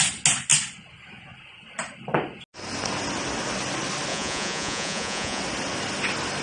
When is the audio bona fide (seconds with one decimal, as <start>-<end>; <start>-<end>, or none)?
0.0-4.1; 5.4-6.4